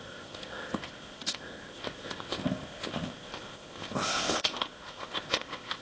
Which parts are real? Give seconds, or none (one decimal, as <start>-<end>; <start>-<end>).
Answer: none